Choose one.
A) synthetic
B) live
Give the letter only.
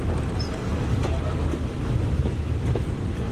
B